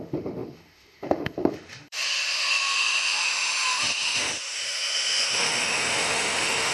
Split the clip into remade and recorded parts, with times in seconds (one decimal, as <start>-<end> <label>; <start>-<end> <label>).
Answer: 0.0-6.7 remade